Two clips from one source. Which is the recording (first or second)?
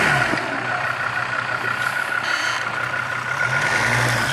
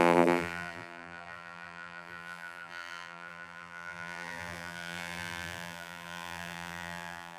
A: first